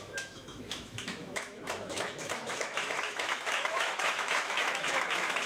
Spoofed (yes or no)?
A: yes